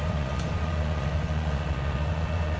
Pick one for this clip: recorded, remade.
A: remade